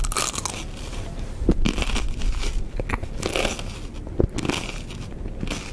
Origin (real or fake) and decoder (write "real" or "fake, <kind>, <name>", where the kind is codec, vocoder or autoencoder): real